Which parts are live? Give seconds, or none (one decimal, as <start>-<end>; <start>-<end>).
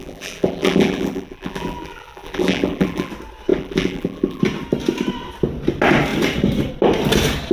3.1-3.5; 4.4-7.5